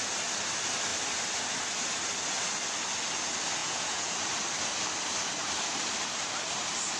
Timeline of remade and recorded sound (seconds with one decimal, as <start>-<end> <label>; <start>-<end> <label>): 0.0-3.6 recorded; 3.6-4.1 remade; 4.1-7.0 recorded